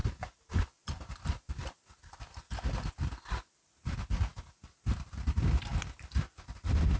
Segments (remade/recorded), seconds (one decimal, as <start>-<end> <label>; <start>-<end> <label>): 0.0-1.6 remade; 1.6-2.5 recorded; 2.5-7.0 remade